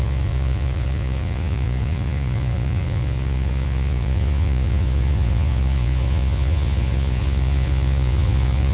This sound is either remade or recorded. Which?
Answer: remade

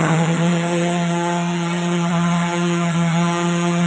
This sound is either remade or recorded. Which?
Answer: remade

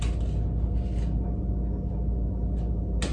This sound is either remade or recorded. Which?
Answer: recorded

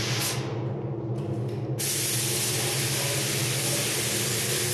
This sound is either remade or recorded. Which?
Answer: recorded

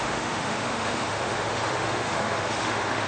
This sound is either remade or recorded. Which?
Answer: remade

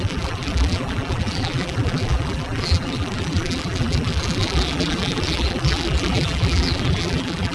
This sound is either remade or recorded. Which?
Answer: remade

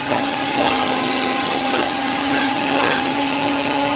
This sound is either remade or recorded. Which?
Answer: remade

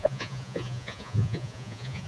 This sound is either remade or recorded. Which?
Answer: remade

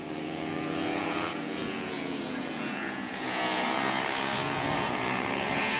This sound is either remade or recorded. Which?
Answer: remade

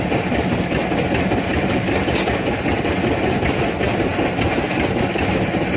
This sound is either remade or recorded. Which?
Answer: recorded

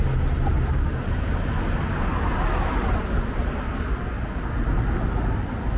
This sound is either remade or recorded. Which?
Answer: recorded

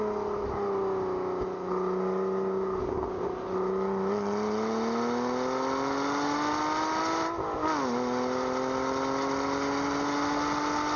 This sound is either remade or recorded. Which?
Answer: recorded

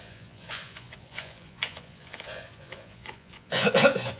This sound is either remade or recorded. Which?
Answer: remade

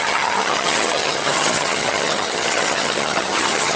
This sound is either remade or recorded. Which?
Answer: remade